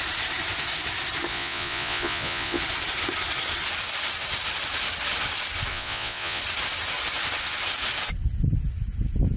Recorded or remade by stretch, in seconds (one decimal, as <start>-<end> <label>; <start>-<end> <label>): 0.0-1.3 recorded; 1.3-2.6 remade; 2.6-5.7 recorded; 5.7-6.4 remade; 6.4-9.4 recorded